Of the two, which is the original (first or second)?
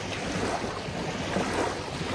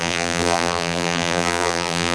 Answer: first